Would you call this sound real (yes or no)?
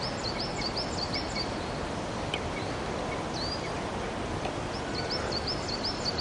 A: yes